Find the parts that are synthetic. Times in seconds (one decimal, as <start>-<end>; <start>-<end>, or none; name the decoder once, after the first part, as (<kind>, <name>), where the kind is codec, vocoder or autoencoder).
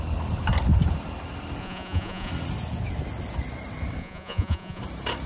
1.6-2.3 (vocoder, Vocos); 4.0-4.8